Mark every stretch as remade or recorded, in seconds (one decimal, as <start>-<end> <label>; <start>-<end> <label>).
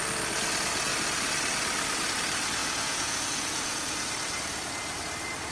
0.0-2.6 recorded; 2.6-4.1 remade; 4.1-5.5 recorded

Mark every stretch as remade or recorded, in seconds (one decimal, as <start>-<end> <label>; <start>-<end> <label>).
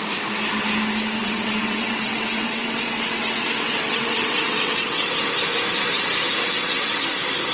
0.0-1.2 recorded; 1.2-5.1 remade; 5.1-6.4 recorded; 6.4-7.0 remade; 7.0-7.5 recorded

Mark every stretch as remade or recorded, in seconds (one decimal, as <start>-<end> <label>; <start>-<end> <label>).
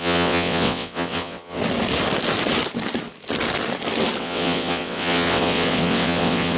0.0-1.6 remade; 1.6-4.2 recorded; 4.2-6.6 remade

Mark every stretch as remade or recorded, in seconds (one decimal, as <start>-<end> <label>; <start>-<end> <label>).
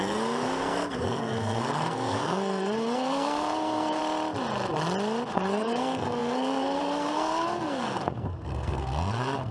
0.0-4.0 remade; 4.0-5.3 recorded; 5.3-9.5 remade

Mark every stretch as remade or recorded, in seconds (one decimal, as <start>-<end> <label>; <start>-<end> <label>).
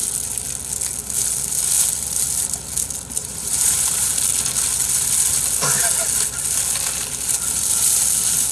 0.0-3.2 recorded; 3.2-4.1 remade; 4.1-8.5 recorded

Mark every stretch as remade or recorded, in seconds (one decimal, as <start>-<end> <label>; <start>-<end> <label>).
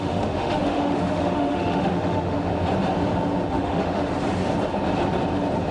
0.0-2.5 remade; 2.5-3.5 recorded; 3.5-4.1 remade; 4.1-5.7 recorded